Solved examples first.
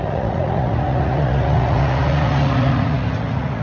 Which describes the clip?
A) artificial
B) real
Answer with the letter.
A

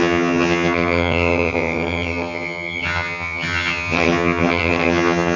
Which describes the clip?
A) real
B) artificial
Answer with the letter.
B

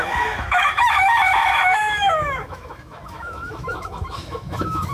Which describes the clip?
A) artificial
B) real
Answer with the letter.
A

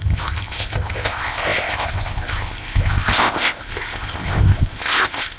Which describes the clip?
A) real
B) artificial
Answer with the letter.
B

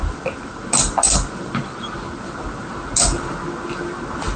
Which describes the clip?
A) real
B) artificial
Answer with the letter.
A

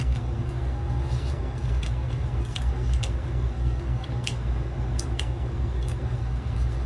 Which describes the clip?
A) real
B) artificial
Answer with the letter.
B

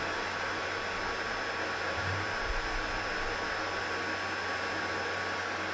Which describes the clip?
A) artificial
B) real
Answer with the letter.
B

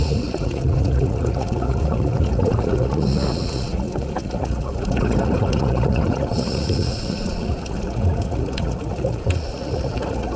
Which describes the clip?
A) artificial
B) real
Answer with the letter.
A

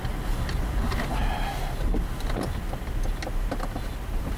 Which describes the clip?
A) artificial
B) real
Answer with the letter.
B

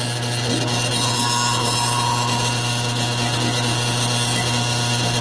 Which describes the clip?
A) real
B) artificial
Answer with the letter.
A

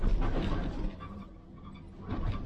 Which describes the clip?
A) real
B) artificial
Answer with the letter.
A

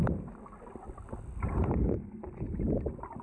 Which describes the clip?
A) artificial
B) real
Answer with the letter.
B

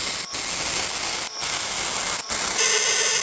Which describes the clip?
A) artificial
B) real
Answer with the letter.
B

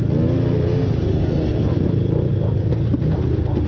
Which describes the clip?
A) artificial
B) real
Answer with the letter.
B